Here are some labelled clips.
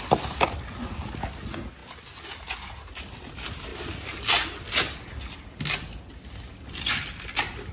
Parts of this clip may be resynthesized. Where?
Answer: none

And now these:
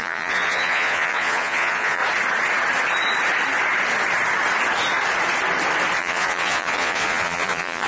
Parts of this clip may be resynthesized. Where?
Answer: 0.0-2.0 (vocoder, Vocos); 6.0-7.9

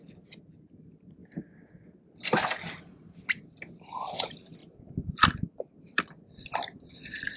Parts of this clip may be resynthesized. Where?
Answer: 0.0-1.2 (vocoder, BigVGAN v2); 2.8-7.4